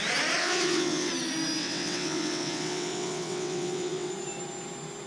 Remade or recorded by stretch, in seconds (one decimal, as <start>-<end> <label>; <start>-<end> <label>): 0.0-0.4 recorded; 0.4-1.1 remade; 1.1-1.6 recorded; 1.6-4.1 remade; 4.1-5.1 recorded